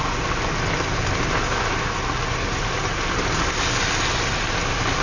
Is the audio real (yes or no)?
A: yes